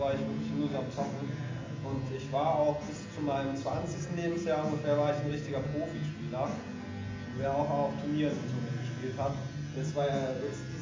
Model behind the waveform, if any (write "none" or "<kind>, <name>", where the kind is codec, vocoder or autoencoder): none